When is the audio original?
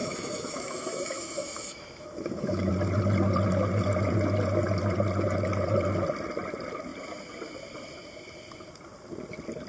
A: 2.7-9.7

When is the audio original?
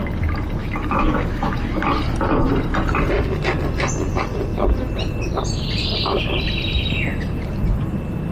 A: 0.0-0.6; 1.7-8.3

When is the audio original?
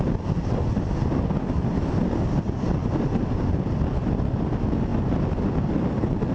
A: 0.0-6.3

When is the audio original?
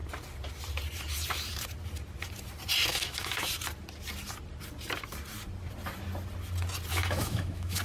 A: 0.0-2.9; 3.5-6.9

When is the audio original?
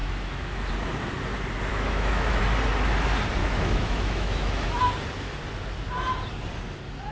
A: 0.7-1.7; 2.4-3.4; 4.8-7.1